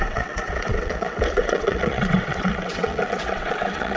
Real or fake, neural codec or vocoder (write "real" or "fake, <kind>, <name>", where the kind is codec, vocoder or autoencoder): fake, vocoder, WaveNeXt